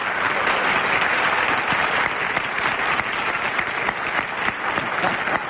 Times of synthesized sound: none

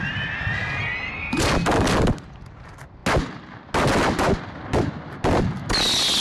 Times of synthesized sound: none

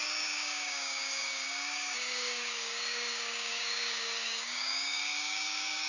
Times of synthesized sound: 0.0-5.9 (codec, DAC)